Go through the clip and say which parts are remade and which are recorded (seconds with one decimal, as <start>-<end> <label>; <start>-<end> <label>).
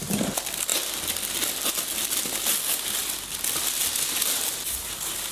0.0-3.0 recorded; 3.0-3.6 remade; 3.6-5.3 recorded